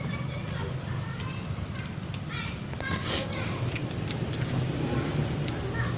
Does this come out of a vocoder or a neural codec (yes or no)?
no